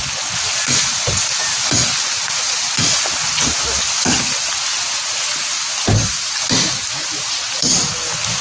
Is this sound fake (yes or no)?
no